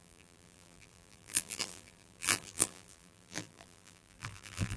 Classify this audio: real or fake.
fake